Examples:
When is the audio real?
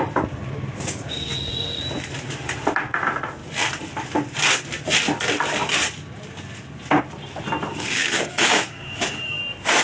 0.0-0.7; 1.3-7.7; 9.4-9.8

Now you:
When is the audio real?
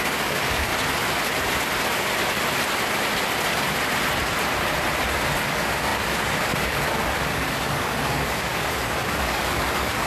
0.7-5.5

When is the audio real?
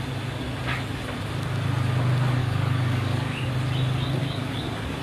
0.0-2.4; 3.5-4.2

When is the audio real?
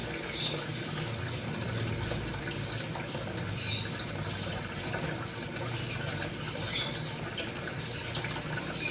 0.0-8.9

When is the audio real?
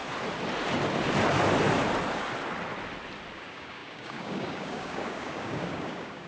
0.0-3.3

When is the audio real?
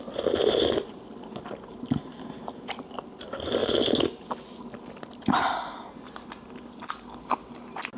0.0-8.0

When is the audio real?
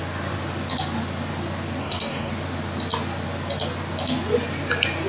0.0-1.8; 2.3-5.1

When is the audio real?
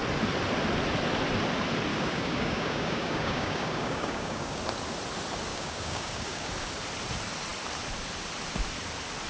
0.0-1.9; 4.6-5.5; 6.5-9.3